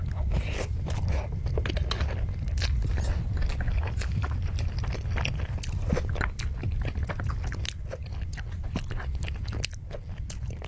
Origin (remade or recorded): recorded